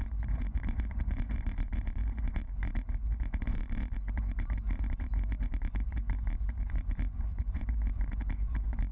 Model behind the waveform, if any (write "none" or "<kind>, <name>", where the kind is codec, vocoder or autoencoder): vocoder, Vocos